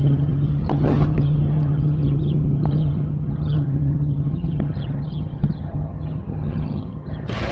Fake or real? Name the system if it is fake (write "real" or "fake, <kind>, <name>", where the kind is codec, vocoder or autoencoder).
fake, vocoder, HiFi-GAN